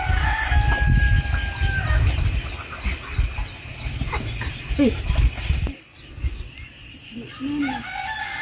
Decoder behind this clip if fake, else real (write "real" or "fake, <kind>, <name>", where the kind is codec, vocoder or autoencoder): real